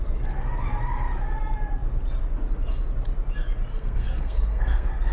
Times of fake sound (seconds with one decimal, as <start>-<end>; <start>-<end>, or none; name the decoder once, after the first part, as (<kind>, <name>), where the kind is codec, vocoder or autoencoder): 3.7-5.1 (codec, SNAC)